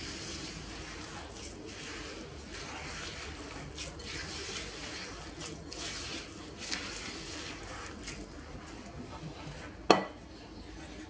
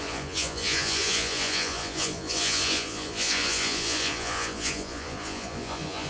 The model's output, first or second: second